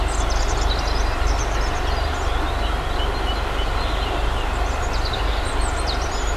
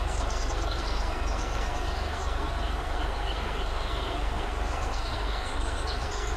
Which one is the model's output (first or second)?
second